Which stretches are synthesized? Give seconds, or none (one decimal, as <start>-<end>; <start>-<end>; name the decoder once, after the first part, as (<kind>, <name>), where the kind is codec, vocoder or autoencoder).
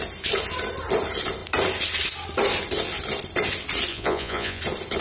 3.9-4.6 (vocoder, Vocos)